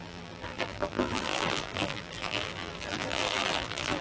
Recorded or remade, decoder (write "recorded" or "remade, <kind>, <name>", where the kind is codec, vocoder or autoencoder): remade, vocoder, BigVGAN v2